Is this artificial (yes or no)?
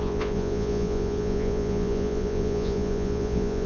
yes